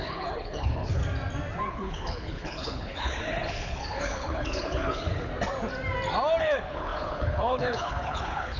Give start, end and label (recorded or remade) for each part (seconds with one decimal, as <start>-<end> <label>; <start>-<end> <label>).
0.0-1.0 remade; 1.0-1.7 recorded; 1.7-5.3 remade; 5.3-6.4 recorded; 6.4-8.6 remade